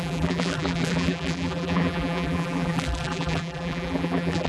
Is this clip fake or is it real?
fake